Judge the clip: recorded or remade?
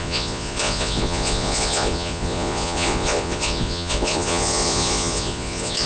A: remade